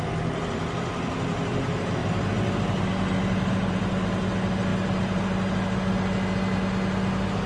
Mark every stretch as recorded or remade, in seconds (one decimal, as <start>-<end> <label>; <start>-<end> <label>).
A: 0.0-7.5 recorded